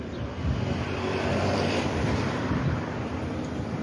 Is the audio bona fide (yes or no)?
no